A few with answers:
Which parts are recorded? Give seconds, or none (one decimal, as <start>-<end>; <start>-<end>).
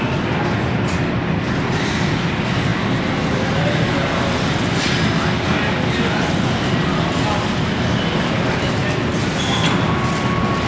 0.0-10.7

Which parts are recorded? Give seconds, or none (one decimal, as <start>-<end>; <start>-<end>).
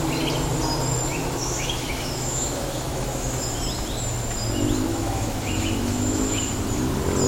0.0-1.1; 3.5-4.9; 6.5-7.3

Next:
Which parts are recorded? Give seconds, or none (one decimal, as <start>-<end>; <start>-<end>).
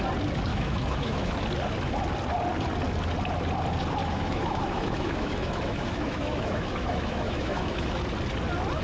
0.0-0.5; 1.3-4.0; 8.0-8.8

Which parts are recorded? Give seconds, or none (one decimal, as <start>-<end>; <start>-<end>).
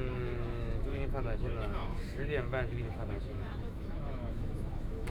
none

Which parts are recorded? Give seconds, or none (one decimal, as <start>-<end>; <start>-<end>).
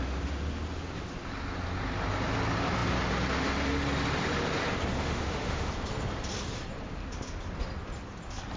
0.0-5.0; 5.7-8.6